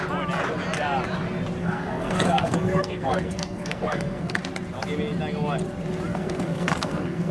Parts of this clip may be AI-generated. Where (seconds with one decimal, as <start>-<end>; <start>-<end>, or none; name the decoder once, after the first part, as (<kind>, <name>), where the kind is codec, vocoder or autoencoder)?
1.6-4.4 (codec, SNAC); 6.1-7.3